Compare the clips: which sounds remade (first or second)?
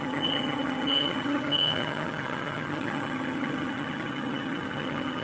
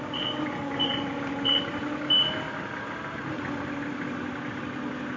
first